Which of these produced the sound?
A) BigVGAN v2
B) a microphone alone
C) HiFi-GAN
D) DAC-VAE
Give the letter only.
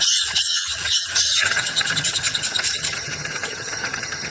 C